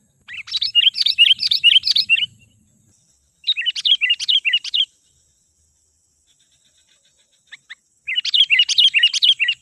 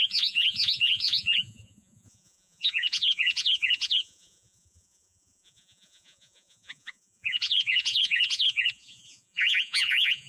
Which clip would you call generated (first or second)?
second